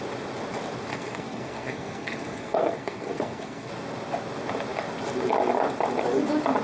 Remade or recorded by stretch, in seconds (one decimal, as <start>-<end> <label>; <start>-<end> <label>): 0.0-0.9 recorded; 0.9-3.7 remade; 3.7-6.6 recorded